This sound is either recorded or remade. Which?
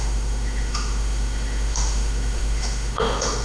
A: remade